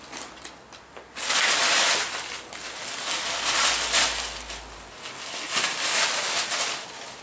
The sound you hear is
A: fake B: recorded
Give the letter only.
B